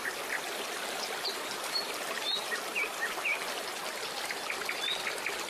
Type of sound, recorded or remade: recorded